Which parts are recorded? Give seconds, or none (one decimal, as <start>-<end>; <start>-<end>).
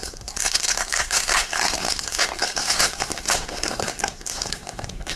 none